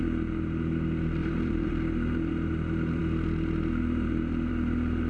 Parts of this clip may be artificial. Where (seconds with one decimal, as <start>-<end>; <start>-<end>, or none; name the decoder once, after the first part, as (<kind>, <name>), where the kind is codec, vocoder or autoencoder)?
1.2-1.7 (vocoder, BigVGAN v2)